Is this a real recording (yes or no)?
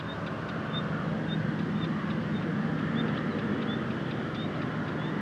yes